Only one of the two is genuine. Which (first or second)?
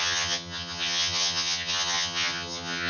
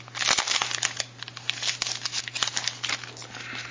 second